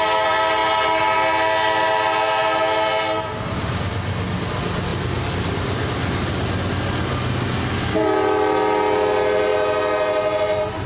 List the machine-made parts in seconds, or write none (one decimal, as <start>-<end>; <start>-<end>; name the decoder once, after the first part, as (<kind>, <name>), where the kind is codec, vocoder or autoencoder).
4.9-6.2 (vocoder, BigVGAN v2)